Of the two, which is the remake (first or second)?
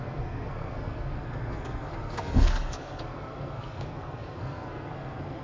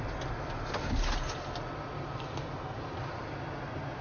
first